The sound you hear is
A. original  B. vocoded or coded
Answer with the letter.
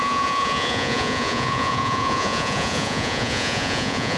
B